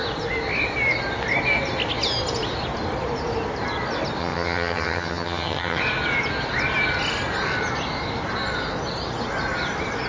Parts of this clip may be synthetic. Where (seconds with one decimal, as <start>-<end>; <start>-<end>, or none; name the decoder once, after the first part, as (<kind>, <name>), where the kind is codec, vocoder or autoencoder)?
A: 4.2-5.8 (vocoder, HiFi-GAN)